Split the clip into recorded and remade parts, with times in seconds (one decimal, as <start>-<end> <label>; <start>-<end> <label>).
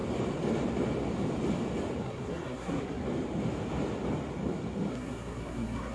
0.0-2.0 recorded; 2.0-3.0 remade; 3.0-4.9 recorded; 4.9-5.9 remade